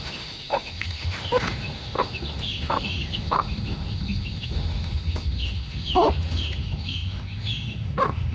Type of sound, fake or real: fake